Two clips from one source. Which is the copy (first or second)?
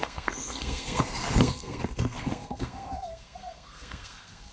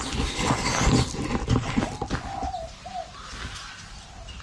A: first